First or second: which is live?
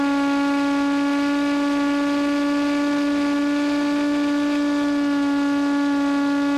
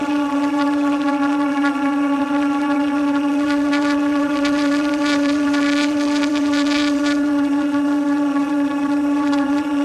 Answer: first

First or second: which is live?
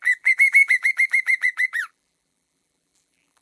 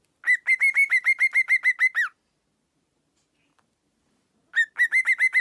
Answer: second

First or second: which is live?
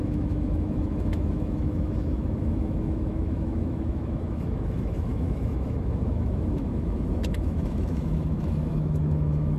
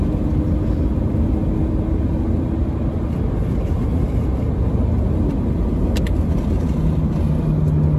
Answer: second